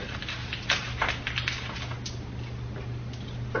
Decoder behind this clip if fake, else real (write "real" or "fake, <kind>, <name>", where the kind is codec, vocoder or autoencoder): real